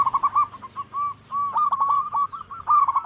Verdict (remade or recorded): recorded